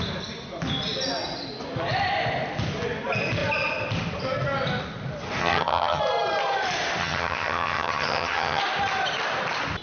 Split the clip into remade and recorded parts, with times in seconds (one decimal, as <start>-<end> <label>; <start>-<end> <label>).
0.0-5.4 recorded; 5.4-6.0 remade; 6.0-7.0 recorded; 7.0-8.6 remade; 8.6-9.8 recorded